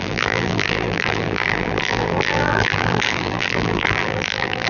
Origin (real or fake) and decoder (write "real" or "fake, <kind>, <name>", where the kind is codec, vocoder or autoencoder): fake, vocoder, BigVGAN v2